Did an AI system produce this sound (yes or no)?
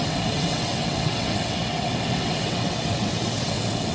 yes